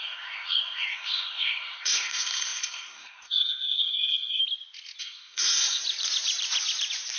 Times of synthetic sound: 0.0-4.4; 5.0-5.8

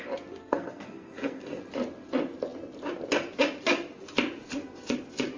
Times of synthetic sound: 0.4-1.6